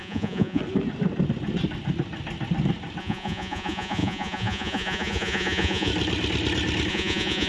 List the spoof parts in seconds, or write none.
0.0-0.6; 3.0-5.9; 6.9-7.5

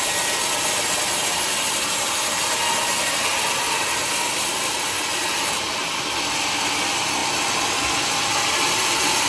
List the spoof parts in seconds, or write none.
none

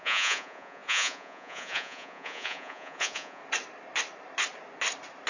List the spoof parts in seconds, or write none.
0.0-3.4